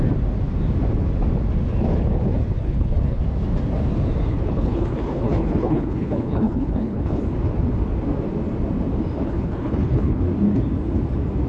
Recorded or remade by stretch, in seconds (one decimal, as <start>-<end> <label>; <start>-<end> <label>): 0.0-2.6 recorded; 2.6-3.2 remade; 3.2-4.3 recorded; 4.3-7.2 remade; 7.2-9.2 recorded; 9.2-10.2 remade; 10.2-11.5 recorded